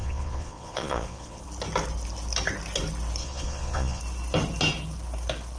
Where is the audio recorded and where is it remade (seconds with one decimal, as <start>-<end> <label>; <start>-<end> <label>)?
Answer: 0.0-1.4 remade; 1.4-3.2 recorded; 3.2-4.0 remade; 4.0-5.6 recorded